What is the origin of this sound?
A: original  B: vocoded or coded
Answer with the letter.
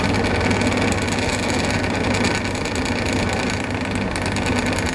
A